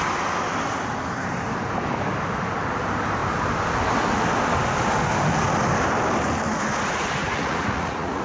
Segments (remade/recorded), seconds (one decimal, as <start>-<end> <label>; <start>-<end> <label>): 0.0-7.2 recorded; 7.2-8.2 remade